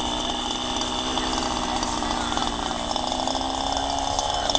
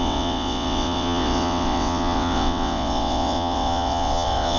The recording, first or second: first